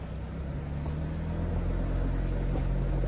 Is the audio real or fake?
real